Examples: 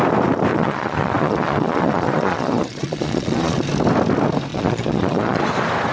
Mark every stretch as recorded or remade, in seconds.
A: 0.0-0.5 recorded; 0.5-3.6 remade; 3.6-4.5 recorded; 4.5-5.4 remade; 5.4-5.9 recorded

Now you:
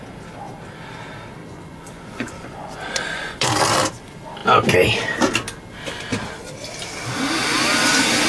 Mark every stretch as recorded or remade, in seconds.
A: 0.0-1.4 recorded; 1.4-3.5 remade; 3.5-8.3 recorded

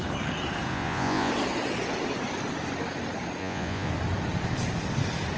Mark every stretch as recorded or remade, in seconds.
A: 0.0-0.7 recorded; 0.7-1.3 remade; 1.3-3.4 recorded; 3.4-3.9 remade; 3.9-5.4 recorded

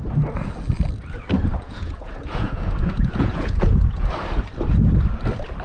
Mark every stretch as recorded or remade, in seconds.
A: 0.0-1.5 recorded; 1.5-4.1 remade; 4.1-5.6 recorded